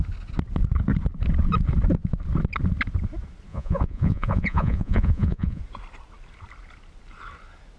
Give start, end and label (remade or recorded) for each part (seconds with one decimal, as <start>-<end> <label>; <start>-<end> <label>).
0.0-3.5 recorded; 3.5-5.6 remade; 5.6-7.8 recorded